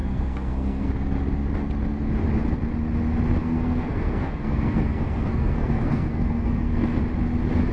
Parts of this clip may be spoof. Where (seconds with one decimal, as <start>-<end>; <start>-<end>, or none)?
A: 0.0-0.9; 3.4-7.0